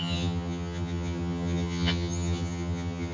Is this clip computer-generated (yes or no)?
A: yes